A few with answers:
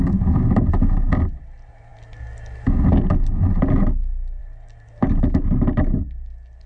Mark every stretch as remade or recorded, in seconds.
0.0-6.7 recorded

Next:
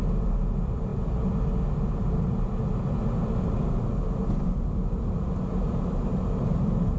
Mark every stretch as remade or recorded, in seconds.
0.0-7.0 recorded

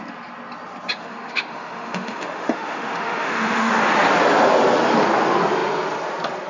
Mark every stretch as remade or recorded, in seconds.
0.0-1.0 recorded; 1.0-3.7 remade; 3.7-6.5 recorded